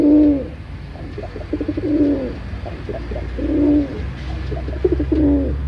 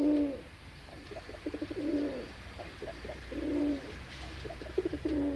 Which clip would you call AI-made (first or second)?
second